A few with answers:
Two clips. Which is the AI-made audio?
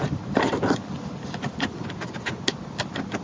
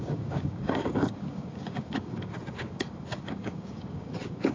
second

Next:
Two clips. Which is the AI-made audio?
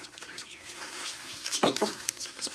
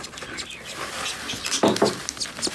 first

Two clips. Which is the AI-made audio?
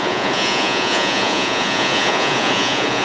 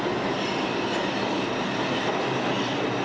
first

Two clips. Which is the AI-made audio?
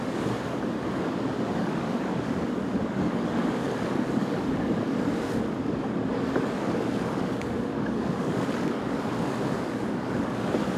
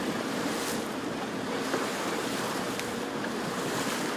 first